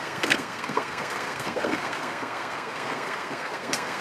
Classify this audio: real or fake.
fake